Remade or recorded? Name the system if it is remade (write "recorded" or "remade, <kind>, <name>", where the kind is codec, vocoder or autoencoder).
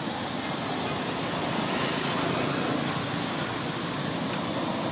recorded